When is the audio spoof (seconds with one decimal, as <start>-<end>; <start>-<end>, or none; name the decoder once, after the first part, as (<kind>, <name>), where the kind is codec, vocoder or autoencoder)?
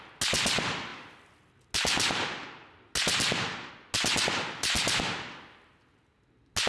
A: none